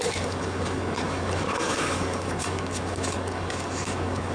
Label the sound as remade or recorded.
remade